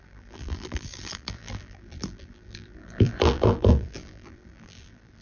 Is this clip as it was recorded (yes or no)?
no